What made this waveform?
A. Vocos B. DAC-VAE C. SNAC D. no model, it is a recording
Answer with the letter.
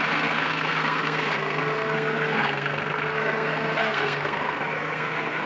C